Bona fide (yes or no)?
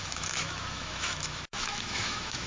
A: no